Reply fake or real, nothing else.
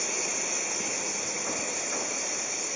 real